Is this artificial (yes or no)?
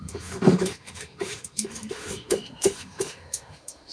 yes